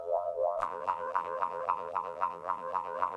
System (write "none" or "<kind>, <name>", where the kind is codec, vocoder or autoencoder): vocoder, BigVGAN v2